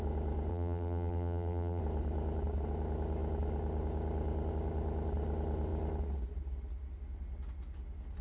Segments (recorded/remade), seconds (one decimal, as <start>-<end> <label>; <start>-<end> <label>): 0.0-0.5 recorded; 0.5-1.8 remade; 1.8-8.2 recorded